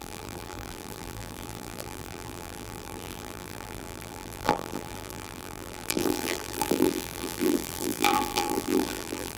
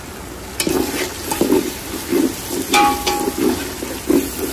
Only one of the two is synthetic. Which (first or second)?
first